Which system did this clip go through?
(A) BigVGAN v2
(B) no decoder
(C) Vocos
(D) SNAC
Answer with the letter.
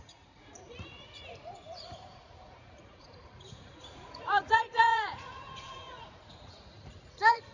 C